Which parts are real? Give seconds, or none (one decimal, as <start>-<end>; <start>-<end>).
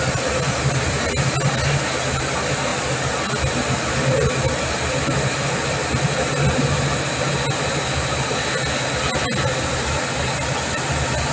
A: 0.0-11.3